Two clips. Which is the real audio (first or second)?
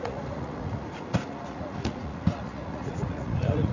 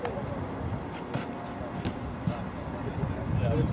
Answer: second